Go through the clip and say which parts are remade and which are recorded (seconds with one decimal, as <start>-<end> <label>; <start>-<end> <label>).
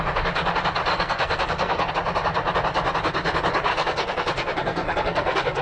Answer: 0.0-0.9 recorded; 0.9-1.9 remade; 1.9-3.7 recorded; 3.7-5.6 remade